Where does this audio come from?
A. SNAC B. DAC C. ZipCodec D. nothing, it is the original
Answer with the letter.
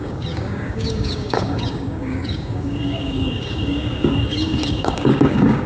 B